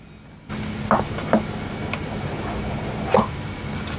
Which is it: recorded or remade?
recorded